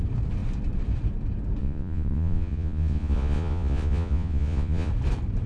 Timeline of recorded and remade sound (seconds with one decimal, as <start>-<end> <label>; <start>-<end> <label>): 0.0-1.6 recorded; 1.6-4.9 remade; 4.9-5.5 recorded